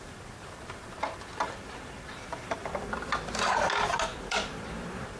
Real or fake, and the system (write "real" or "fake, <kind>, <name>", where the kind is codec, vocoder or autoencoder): fake, vocoder, BigVGAN v2